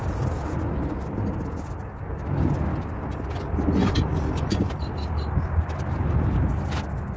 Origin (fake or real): real